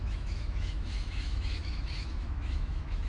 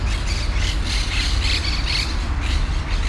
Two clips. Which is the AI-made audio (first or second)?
first